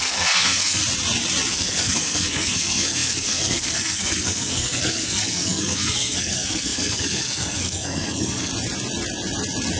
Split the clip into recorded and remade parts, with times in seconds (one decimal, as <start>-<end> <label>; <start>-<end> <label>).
0.0-0.8 remade; 0.8-1.5 recorded; 1.5-8.5 remade; 8.5-9.8 recorded